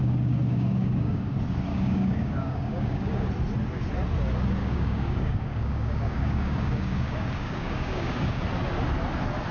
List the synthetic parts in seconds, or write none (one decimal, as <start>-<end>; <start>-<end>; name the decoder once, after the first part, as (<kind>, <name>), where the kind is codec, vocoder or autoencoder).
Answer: 0.0-1.2 (codec, DAC); 1.7-3.3; 4.6-8.4